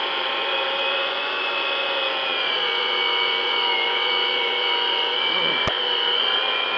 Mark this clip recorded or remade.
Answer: remade